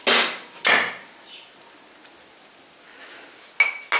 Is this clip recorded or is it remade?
recorded